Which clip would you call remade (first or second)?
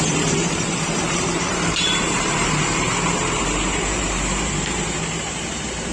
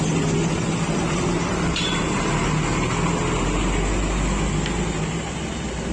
first